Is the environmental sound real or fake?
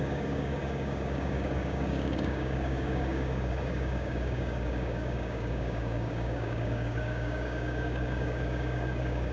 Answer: fake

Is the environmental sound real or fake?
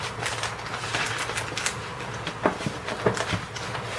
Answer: real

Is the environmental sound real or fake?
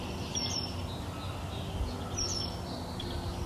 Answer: real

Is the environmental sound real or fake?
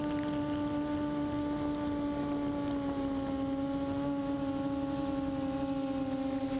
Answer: real